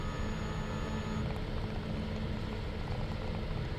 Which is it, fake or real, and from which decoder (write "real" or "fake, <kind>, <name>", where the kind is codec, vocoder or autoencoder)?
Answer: real